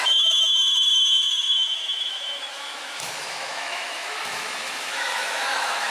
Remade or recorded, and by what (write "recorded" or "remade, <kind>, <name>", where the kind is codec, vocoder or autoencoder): remade, autoencoder, DAC-VAE